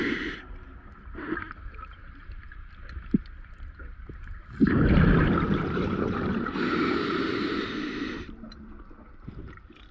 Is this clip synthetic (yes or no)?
yes